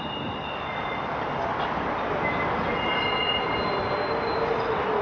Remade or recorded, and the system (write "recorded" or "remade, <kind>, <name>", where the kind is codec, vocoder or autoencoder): recorded